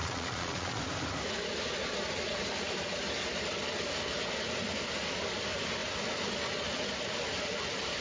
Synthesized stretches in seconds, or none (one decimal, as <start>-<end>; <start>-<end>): 0.0-0.8